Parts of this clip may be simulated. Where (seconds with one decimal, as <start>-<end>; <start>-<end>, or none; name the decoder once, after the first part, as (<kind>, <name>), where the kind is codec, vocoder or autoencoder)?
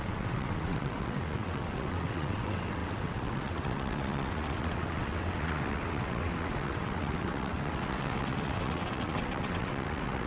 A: 0.0-10.3 (vocoder, WaveNeXt)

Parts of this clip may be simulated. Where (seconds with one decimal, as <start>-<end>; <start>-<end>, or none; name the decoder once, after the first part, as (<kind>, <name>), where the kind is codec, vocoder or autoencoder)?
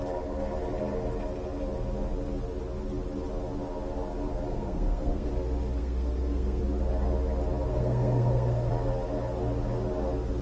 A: 4.5-5.3 (codec, SNAC); 5.8-6.6; 7.7-8.7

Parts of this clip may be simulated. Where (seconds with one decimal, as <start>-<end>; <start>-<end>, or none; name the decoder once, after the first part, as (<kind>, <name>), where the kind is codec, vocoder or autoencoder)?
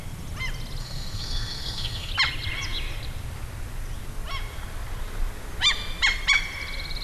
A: 0.8-2.1 (codec, SNAC)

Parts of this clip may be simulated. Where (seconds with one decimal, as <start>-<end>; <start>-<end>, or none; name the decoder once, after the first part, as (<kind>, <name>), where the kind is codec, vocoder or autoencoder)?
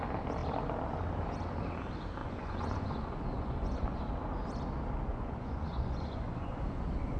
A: 2.2-4.0 (vocoder, Vocos); 5.1-6.8